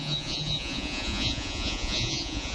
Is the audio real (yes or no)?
no